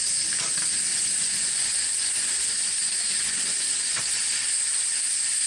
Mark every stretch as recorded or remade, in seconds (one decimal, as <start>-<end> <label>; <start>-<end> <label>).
0.0-0.9 recorded; 0.9-4.0 remade; 4.0-5.5 recorded